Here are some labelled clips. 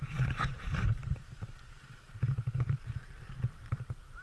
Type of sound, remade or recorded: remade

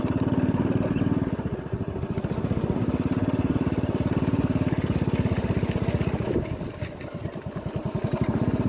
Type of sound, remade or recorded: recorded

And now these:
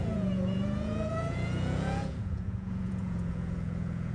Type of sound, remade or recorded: remade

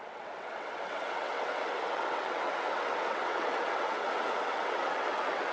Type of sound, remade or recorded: remade